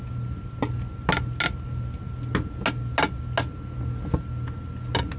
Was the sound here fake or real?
real